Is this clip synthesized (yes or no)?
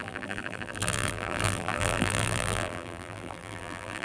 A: yes